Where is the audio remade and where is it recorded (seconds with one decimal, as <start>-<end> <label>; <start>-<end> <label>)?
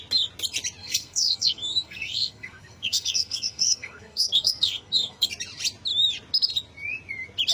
0.0-0.8 recorded; 0.8-5.3 remade; 5.3-7.5 recorded